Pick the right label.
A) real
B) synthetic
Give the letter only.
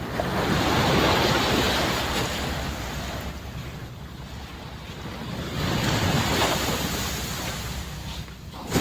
A